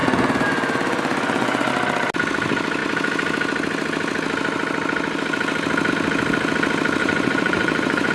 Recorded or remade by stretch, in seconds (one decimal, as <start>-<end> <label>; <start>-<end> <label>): 0.0-1.7 remade; 1.7-7.0 recorded; 7.0-8.1 remade